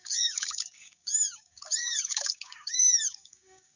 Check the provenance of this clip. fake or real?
fake